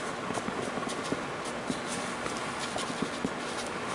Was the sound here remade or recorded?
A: recorded